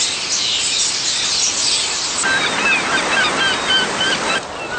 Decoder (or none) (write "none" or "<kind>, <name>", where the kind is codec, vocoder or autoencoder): none